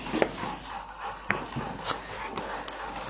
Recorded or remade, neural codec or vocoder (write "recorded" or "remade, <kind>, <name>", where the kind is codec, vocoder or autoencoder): recorded